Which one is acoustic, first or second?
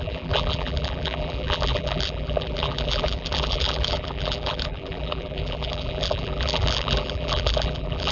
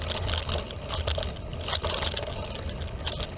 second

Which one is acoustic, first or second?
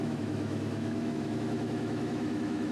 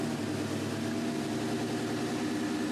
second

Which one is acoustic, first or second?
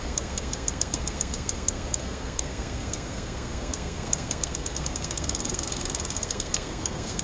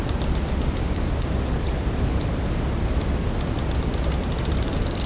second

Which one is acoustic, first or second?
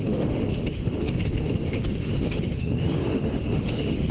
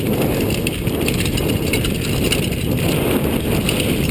second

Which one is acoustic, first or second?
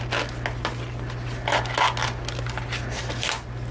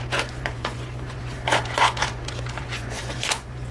first